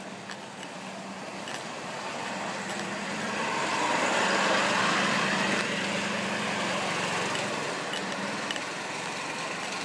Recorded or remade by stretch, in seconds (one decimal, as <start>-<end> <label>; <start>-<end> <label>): 0.0-1.3 recorded; 1.3-2.5 remade; 2.5-9.8 recorded